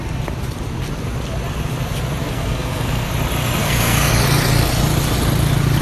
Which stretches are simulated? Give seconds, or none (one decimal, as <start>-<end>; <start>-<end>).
2.2-3.1; 3.6-4.1